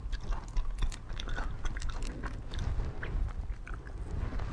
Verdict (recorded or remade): recorded